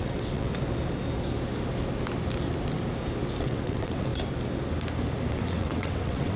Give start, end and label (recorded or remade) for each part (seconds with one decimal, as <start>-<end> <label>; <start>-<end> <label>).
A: 0.0-0.5 remade; 0.5-3.4 recorded; 3.4-4.1 remade; 4.1-5.3 recorded; 5.3-6.4 remade